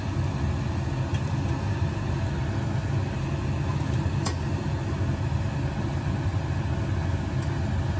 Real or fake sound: real